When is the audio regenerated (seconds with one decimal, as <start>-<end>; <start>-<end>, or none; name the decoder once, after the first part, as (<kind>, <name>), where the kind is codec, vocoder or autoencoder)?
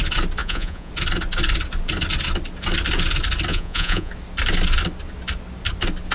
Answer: 0.4-0.9 (vocoder, Vocos); 3.5-4.1